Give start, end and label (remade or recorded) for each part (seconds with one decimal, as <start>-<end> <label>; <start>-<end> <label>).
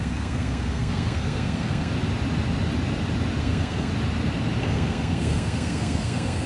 0.0-1.9 remade; 1.9-3.4 recorded; 3.4-3.9 remade; 3.9-4.6 recorded; 4.6-6.5 remade